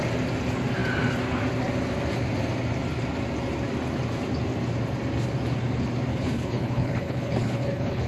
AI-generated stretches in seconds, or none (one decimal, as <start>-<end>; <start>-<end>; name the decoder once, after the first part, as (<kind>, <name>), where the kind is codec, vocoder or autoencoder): 6.1-8.1 (codec, HILCodec)